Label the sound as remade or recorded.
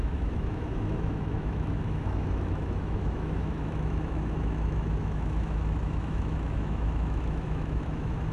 remade